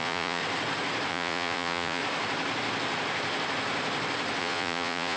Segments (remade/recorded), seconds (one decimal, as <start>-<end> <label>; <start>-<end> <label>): 0.0-0.4 remade; 0.4-1.1 recorded; 1.1-2.0 remade; 2.0-4.4 recorded; 4.4-5.2 remade